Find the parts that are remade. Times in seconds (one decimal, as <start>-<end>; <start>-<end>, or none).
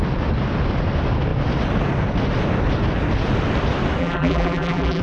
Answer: 4.0-5.0